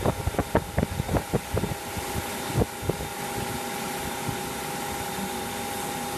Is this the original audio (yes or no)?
yes